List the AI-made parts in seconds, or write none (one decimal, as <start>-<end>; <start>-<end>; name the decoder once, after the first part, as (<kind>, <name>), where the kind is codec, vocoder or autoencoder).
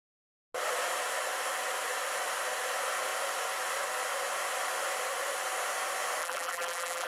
6.2-7.1 (vocoder, BigVGAN v2)